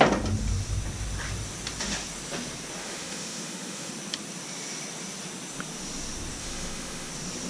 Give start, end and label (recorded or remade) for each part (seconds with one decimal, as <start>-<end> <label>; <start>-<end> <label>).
0.0-2.8 recorded; 2.8-3.9 remade; 3.9-6.4 recorded; 6.4-7.1 remade; 7.1-7.5 recorded